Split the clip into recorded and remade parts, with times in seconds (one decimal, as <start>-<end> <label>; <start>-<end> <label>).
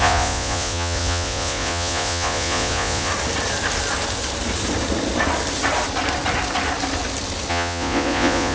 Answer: 0.0-3.1 remade; 3.1-7.5 recorded; 7.5-8.5 remade